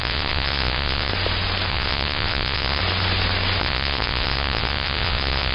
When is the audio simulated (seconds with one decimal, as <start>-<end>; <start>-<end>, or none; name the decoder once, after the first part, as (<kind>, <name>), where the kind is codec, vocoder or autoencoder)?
0.0-1.1 (vocoder, WaveNeXt); 1.7-2.8; 3.6-5.5